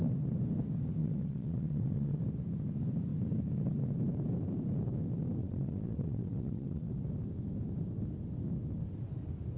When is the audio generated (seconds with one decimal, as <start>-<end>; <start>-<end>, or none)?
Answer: 1.0-2.2; 5.4-6.9